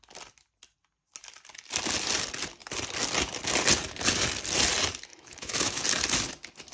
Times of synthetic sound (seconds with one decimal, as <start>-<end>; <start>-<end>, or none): 5.1-5.8